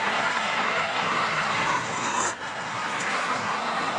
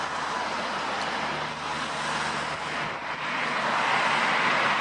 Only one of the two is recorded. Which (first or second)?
second